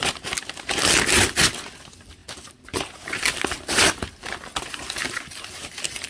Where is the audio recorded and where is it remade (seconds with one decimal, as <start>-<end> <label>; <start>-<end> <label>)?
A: 0.0-6.1 recorded